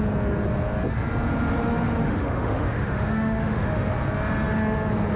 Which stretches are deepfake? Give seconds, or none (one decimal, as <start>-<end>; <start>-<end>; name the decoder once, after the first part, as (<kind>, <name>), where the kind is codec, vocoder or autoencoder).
2.0-3.9 (autoencoder, DAC-VAE)

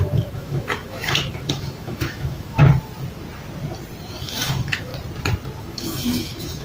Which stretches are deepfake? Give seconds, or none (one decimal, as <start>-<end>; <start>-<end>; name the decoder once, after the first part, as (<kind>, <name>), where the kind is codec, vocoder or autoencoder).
0.0-2.6 (autoencoder, DAC-VAE); 4.2-4.9; 5.6-6.6

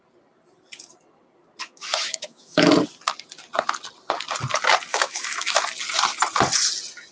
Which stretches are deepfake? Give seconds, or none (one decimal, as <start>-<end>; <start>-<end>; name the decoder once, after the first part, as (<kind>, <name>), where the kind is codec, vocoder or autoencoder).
1.6-2.7 (autoencoder, DAC-VAE); 4.9-5.6

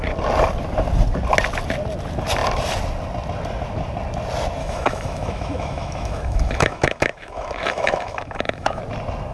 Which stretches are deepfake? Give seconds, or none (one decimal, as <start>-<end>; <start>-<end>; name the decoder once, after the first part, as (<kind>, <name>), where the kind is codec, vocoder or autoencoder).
4.6-8.8 (autoencoder, DAC-VAE)

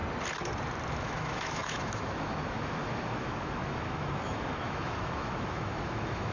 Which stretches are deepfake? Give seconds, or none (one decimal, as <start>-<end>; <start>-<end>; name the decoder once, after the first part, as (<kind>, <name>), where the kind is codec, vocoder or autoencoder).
0.9-6.3 (autoencoder, DAC-VAE)

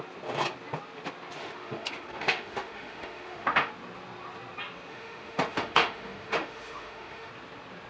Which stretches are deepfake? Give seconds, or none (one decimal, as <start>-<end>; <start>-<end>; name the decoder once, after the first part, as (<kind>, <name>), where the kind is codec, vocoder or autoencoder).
1.4-3.7 (autoencoder, DAC-VAE); 4.9-7.3

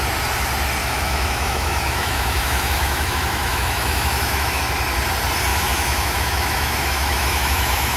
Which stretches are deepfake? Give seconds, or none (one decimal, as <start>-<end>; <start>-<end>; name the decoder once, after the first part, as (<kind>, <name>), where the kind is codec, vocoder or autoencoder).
0.8-4.6 (autoencoder, DAC-VAE); 5.5-8.0